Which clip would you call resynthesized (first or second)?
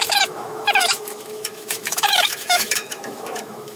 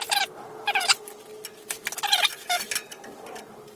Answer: first